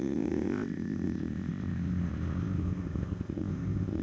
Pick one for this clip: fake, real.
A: fake